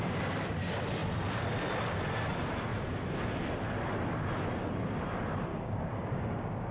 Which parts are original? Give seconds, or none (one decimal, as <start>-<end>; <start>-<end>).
0.0-5.5